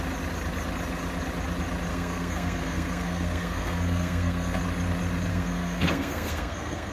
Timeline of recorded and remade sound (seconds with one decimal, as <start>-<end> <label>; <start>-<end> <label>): 0.0-1.9 recorded; 1.9-4.6 remade; 4.6-5.3 recorded; 5.3-6.9 remade